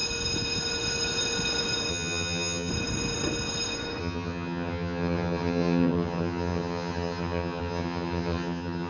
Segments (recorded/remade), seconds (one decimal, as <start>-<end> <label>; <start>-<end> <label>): 0.0-1.9 recorded; 1.9-2.7 remade; 2.7-4.0 recorded; 4.0-8.9 remade